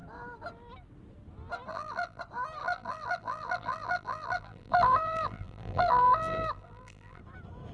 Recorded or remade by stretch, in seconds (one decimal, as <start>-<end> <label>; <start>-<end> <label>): 0.0-1.7 recorded; 1.7-2.2 remade; 2.2-2.6 recorded; 2.6-7.2 remade; 7.2-7.7 recorded